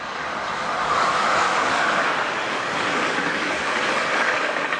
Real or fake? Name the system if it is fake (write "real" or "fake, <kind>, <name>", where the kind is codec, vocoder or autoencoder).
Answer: fake, codec, DAC